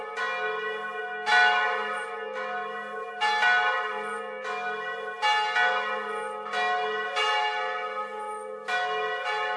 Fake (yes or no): no